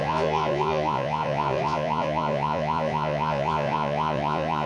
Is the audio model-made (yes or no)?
yes